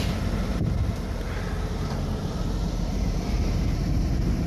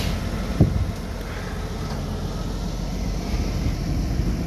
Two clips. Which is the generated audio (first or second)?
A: first